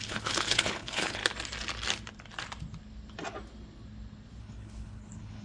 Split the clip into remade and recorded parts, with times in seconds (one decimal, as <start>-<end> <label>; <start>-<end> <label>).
0.0-1.2 remade; 1.2-4.4 recorded; 4.4-5.4 remade